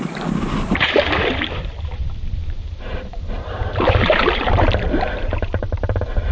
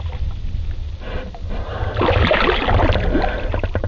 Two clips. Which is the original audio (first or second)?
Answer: second